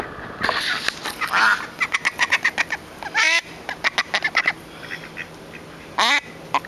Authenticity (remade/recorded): recorded